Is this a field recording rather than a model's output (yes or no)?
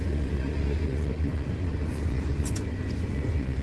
no